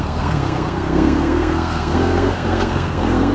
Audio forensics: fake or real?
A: fake